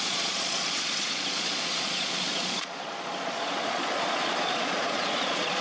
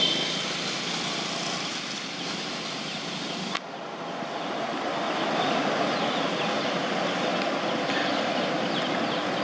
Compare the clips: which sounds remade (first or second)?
first